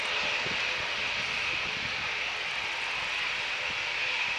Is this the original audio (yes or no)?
yes